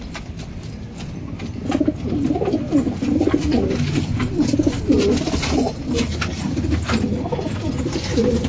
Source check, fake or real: fake